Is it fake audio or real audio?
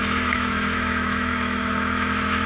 fake